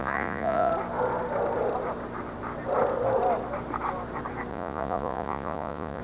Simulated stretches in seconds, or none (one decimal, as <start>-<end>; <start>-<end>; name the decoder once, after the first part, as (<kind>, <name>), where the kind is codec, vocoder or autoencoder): 0.0-0.7 (vocoder, Vocos); 4.5-6.0